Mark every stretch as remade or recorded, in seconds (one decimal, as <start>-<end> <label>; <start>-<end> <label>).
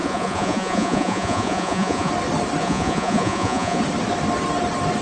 0.0-2.1 remade; 2.1-2.6 recorded; 2.6-3.8 remade; 3.8-5.0 recorded